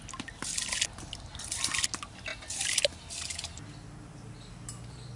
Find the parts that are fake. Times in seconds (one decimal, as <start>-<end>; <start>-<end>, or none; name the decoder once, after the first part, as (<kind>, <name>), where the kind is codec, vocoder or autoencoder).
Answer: none